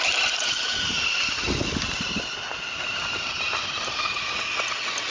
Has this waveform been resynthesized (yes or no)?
no